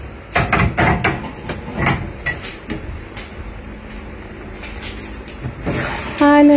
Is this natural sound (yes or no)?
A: yes